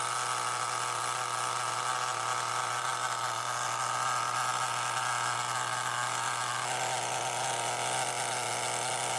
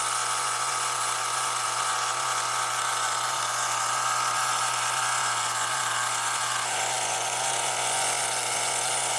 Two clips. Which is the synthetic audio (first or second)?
second